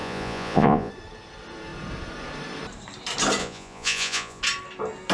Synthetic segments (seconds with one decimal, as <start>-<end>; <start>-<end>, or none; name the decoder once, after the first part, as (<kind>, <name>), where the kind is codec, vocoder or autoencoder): 0.0-0.9 (vocoder, Vocos); 3.4-4.4